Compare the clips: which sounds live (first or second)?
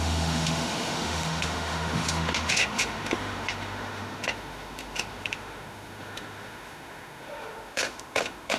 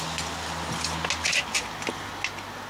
second